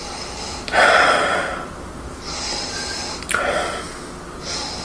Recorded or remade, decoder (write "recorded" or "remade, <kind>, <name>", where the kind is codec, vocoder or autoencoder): recorded